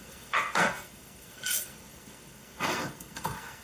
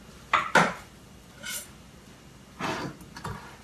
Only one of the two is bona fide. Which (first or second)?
second